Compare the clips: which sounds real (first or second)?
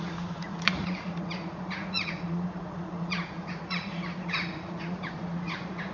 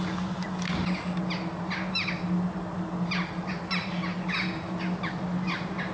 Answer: second